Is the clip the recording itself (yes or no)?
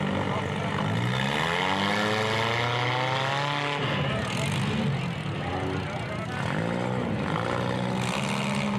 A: yes